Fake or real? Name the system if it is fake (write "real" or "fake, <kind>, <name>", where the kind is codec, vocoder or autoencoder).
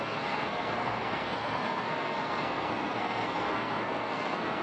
fake, codec, SNAC